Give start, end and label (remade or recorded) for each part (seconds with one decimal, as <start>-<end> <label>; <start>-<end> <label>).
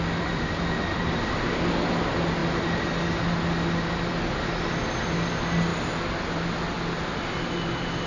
0.0-8.1 recorded